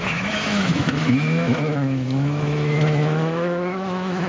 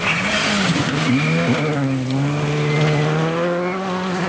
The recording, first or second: second